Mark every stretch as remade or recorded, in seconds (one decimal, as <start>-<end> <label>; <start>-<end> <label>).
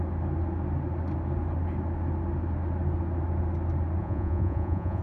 0.0-4.0 recorded; 4.0-5.0 remade